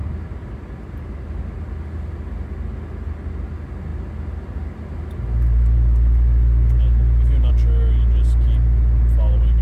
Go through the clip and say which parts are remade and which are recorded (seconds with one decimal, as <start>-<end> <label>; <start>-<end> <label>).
0.0-9.6 recorded